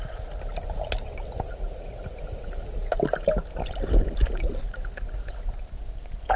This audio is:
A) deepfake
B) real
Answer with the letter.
B